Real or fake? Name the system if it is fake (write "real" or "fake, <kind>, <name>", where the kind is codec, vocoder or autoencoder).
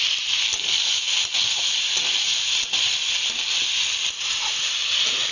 real